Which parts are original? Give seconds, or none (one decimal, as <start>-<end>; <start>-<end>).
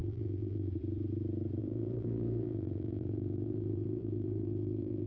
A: 0.7-1.6